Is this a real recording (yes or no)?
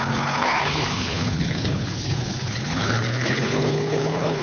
no